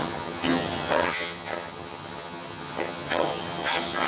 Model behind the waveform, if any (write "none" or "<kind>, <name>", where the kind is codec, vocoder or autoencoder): vocoder, HiFi-GAN